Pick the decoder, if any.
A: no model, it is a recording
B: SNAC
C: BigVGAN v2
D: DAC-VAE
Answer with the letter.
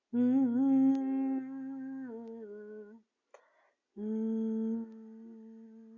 A